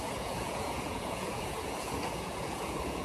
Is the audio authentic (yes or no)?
no